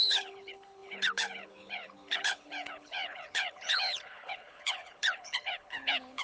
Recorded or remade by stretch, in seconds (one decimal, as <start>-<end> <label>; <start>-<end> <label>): 0.0-6.2 remade